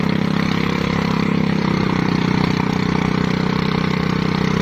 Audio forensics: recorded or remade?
remade